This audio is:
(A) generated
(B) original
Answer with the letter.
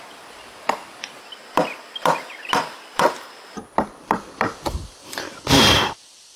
A